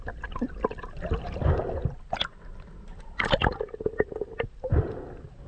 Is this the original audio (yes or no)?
yes